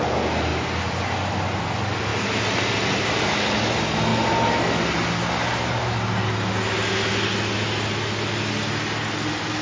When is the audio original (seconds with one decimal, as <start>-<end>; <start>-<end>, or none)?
0.0-9.6